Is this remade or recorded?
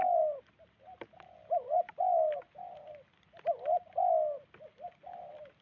recorded